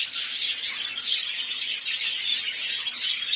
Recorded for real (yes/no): yes